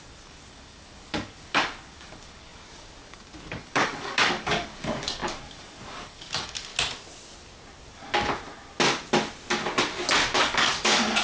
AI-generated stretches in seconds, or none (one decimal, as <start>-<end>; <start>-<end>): 0.0-6.7; 10.4-11.2